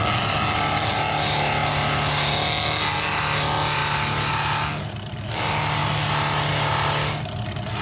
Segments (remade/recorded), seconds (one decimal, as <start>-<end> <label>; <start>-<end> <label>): 0.0-7.8 recorded